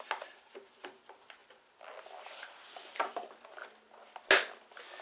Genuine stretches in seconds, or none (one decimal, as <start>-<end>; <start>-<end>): 0.0-5.0